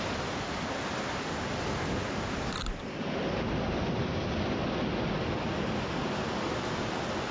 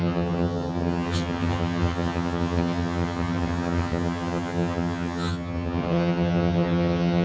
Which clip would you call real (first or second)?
first